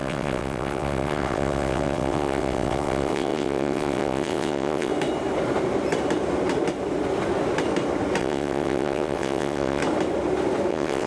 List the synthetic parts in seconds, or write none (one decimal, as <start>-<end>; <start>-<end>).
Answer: 0.0-4.9; 8.2-9.8; 10.7-11.1